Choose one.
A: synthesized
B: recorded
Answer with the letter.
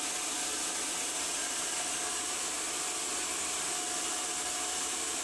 B